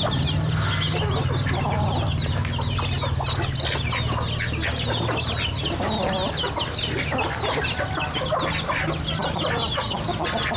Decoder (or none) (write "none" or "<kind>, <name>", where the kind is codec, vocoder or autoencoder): none